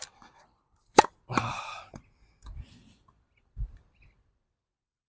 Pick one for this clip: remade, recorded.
remade